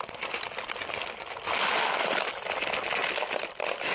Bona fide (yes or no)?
yes